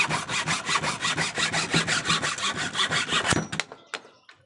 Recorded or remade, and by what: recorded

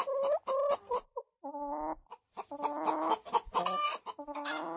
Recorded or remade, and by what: recorded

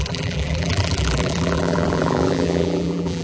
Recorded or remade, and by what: remade, vocoder, BigVGAN v2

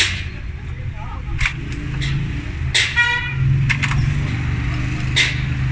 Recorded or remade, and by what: recorded